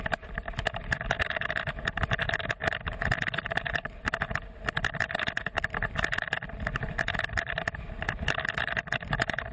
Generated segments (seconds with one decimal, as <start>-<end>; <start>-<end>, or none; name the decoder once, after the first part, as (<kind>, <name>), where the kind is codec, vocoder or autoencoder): none